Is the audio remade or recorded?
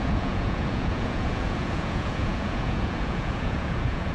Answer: remade